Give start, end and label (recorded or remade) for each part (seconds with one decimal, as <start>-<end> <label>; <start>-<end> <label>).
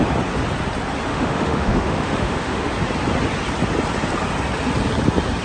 0.0-1.1 recorded; 1.1-2.7 remade; 2.7-5.4 recorded